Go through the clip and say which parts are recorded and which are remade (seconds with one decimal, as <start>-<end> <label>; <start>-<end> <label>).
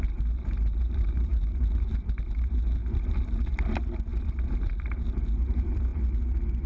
0.0-5.9 remade; 5.9-6.7 recorded